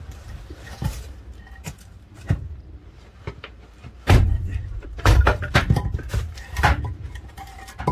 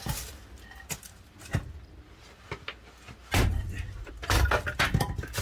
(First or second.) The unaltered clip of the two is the second